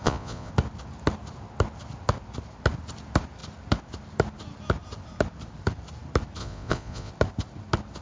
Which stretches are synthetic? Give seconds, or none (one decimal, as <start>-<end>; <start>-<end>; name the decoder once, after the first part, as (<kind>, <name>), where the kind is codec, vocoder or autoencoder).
0.0-0.5 (vocoder, Vocos); 6.4-7.1